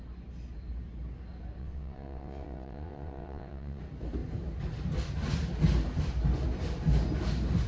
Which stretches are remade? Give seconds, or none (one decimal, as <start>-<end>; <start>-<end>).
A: 1.6-3.8

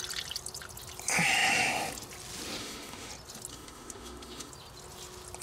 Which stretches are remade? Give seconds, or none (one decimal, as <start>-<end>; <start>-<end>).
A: 2.6-3.1; 3.5-4.5

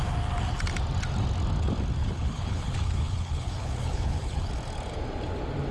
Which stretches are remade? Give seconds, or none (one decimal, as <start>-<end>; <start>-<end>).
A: 2.0-4.5